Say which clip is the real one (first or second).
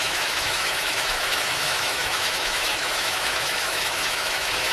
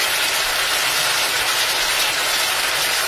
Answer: second